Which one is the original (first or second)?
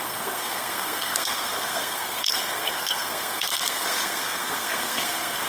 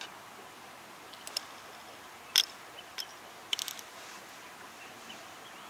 second